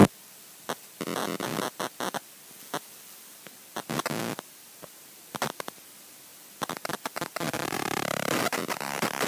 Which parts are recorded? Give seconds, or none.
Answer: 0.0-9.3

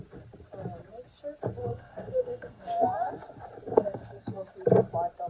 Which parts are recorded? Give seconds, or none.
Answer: 0.0-1.6; 3.1-3.7; 4.5-5.3

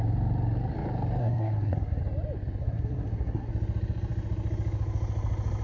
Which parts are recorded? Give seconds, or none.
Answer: 0.0-1.2; 2.0-2.6; 3.5-5.6